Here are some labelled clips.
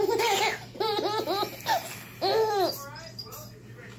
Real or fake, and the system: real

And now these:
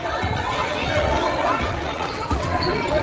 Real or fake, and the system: fake, vocoder, WaveNeXt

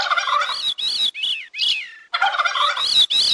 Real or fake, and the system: real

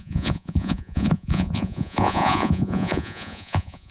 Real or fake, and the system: fake, vocoder, Vocos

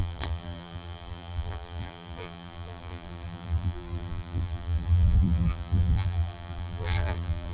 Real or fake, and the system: fake, vocoder, BigVGAN v2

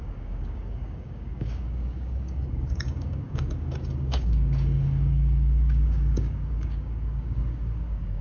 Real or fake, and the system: fake, codec, DAC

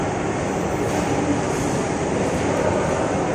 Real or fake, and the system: real